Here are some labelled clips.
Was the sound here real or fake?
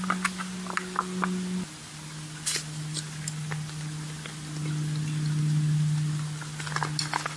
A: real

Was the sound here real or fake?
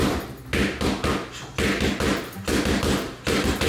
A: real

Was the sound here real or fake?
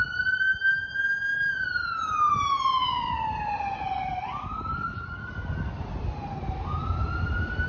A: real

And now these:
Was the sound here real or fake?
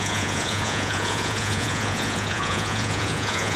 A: fake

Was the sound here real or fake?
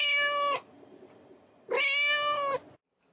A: real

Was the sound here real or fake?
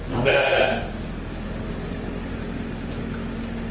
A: real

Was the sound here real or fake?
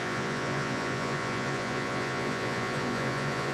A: fake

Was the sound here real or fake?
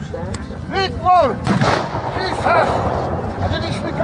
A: fake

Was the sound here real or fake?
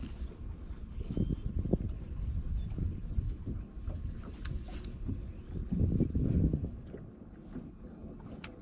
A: real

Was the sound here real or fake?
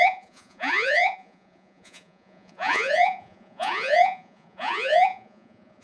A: fake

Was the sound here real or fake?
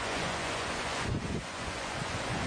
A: fake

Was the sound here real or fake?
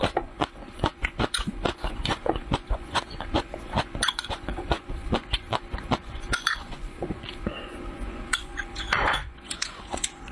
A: fake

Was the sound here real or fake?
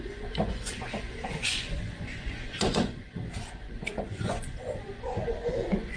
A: fake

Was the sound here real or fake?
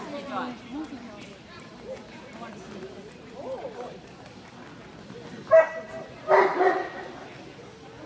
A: real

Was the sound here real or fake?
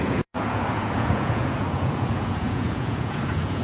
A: fake